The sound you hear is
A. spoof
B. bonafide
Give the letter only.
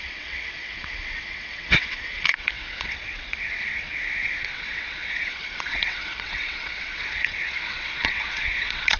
A